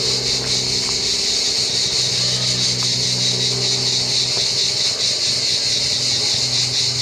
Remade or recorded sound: recorded